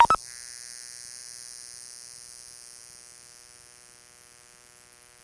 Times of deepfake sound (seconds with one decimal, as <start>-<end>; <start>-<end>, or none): none